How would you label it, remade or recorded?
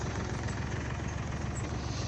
remade